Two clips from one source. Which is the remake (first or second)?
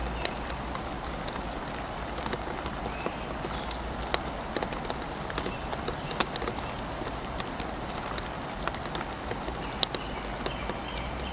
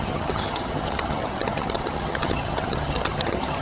second